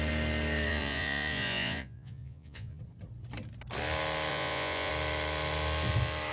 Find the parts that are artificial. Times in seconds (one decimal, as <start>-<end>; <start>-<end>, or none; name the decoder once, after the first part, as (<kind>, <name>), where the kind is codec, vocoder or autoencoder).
0.7-2.8 (vocoder, Vocos); 4.3-4.9